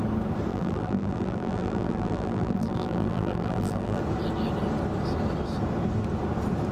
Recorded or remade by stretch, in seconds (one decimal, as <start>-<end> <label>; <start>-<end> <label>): 0.0-0.5 recorded; 0.5-4.0 remade; 4.0-6.7 recorded